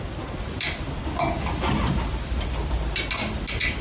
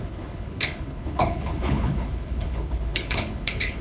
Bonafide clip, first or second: first